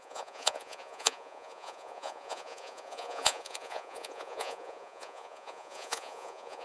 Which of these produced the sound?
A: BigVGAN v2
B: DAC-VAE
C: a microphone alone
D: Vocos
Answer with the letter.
D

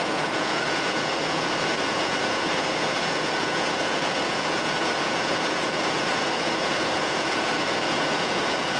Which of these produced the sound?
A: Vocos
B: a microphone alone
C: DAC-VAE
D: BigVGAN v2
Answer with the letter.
A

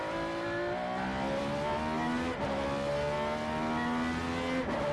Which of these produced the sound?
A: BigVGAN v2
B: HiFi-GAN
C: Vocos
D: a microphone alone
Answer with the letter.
D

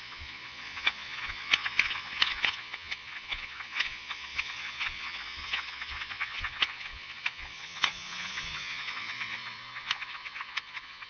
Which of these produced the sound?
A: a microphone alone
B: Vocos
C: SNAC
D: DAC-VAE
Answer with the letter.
B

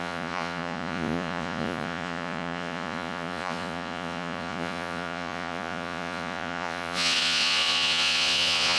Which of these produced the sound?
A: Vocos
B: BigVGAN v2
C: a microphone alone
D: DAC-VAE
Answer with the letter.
A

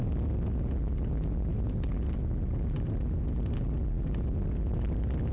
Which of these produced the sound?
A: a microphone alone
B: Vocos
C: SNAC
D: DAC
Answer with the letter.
A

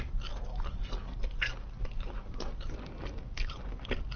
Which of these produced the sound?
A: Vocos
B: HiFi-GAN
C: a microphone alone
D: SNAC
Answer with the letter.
C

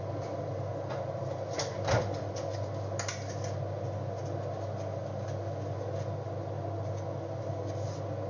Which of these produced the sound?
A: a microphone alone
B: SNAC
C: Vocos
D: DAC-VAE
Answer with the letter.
A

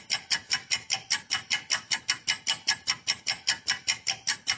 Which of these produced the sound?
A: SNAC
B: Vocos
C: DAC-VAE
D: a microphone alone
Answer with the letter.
D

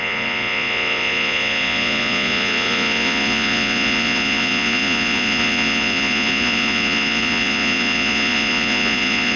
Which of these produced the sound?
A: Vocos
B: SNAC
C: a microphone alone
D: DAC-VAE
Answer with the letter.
A